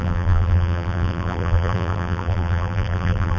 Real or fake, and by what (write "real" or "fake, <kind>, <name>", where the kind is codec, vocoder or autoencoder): fake, vocoder, BigVGAN v2